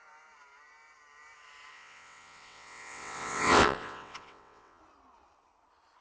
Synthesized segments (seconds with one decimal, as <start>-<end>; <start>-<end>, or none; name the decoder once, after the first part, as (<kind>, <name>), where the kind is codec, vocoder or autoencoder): 1.7-4.8 (vocoder, WaveNeXt)